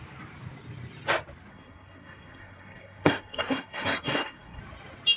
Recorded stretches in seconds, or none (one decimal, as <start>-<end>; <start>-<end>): 0.0-1.5; 4.6-5.2